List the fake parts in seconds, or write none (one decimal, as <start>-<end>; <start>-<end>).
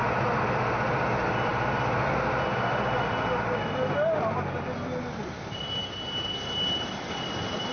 none